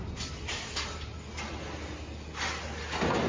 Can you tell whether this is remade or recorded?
recorded